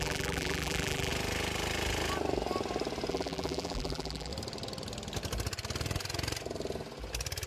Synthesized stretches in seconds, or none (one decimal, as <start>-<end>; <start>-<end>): 0.0-1.1; 3.1-4.3